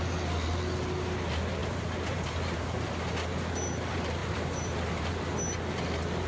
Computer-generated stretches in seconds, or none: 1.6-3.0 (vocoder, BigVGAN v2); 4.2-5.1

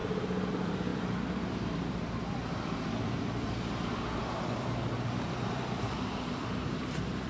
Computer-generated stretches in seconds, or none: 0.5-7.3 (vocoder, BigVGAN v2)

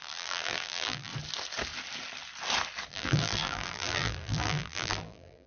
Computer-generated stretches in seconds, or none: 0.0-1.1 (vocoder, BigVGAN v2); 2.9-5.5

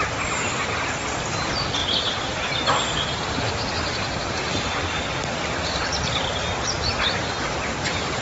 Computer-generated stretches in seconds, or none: 0.0-8.2 (vocoder, BigVGAN v2)

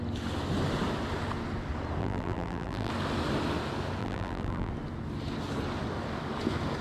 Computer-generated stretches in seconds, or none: 2.0-2.9 (vocoder, BigVGAN v2); 4.0-4.7

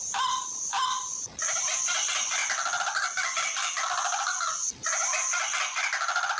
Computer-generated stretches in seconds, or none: 2.4-4.3 (vocoder, BigVGAN v2); 5.0-6.4

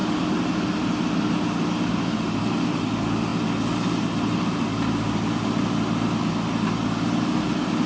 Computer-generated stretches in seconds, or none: none